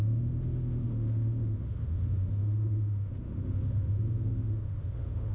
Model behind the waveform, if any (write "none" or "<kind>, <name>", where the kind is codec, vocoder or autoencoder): autoencoder, DAC-VAE